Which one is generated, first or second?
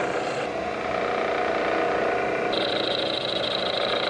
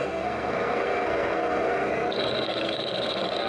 second